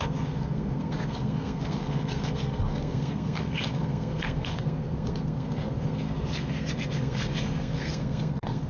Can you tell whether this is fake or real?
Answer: fake